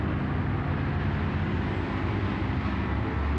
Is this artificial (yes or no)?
no